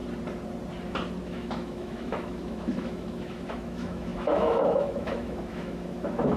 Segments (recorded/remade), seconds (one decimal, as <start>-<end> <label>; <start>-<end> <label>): 0.0-1.2 recorded; 1.2-6.4 remade